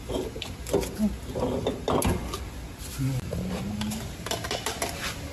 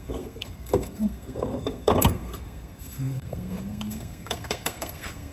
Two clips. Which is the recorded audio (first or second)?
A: first